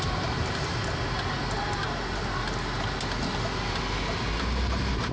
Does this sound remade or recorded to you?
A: recorded